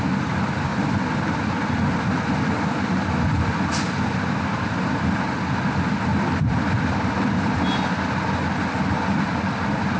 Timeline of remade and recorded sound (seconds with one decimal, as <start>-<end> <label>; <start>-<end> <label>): 0.0-0.7 recorded; 0.7-5.1 remade; 5.1-6.1 recorded; 6.1-7.5 remade; 7.5-10.0 recorded

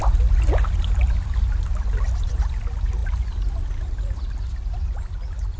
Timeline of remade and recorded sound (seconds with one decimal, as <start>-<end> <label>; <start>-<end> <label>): 0.0-5.6 recorded

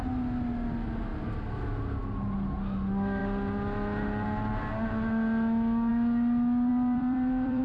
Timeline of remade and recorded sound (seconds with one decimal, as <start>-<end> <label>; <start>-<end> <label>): 0.0-6.7 recorded; 6.7-7.6 remade

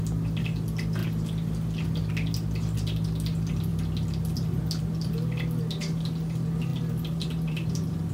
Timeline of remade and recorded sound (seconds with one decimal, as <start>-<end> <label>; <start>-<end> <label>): 0.0-6.7 recorded; 6.7-8.1 remade

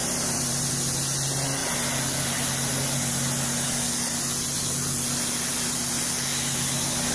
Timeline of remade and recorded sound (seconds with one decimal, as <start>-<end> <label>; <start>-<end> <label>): 0.0-0.7 remade; 0.7-7.1 recorded

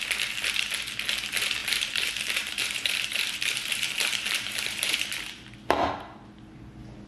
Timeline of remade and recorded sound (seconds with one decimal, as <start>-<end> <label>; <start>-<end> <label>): 0.0-1.6 recorded; 1.6-5.9 remade; 5.9-7.1 recorded

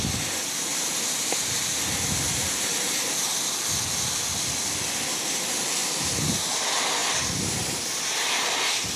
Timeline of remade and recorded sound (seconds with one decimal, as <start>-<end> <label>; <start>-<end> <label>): 0.0-0.7 recorded; 0.7-3.6 remade; 3.6-5.8 recorded; 5.8-6.4 remade; 6.4-9.0 recorded